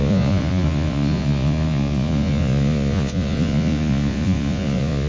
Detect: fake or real fake